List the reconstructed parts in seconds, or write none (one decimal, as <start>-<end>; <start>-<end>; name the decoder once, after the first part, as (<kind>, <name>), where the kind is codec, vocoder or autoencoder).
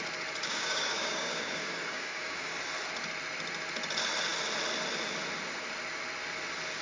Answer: 0.4-2.6 (codec, DAC)